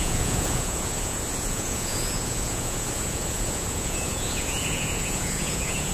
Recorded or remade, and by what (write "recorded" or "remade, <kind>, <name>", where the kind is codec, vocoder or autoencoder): remade, vocoder, Vocos